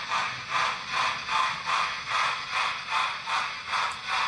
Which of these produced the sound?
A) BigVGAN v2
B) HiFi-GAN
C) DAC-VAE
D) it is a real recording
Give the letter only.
D